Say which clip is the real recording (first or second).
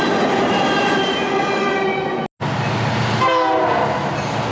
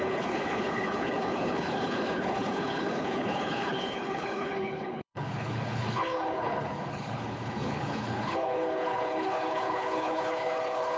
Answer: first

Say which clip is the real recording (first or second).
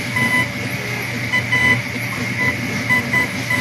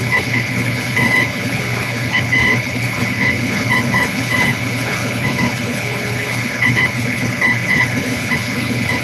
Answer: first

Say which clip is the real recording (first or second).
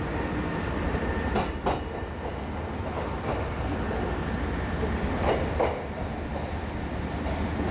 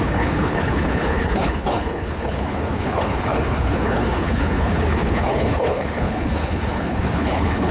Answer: first